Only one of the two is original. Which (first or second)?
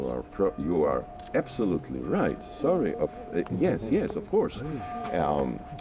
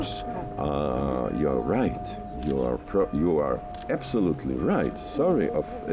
second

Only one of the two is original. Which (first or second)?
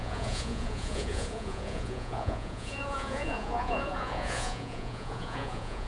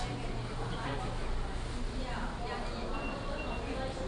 second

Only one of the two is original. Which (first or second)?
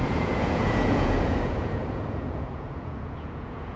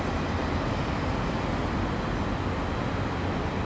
second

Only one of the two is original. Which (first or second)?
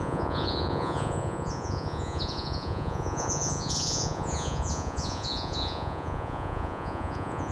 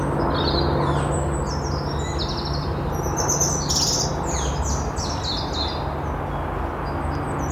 second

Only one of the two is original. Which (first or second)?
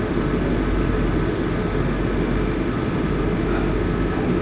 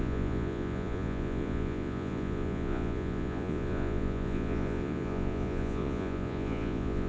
first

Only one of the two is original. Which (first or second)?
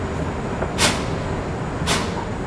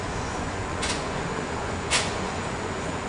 first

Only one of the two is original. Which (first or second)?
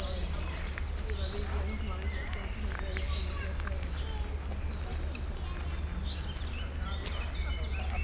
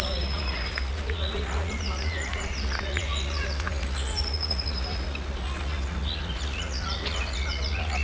first